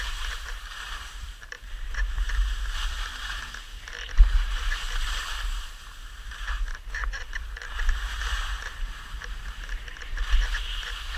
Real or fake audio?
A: fake